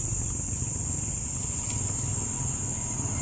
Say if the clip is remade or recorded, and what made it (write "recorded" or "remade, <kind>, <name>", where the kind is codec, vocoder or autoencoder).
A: recorded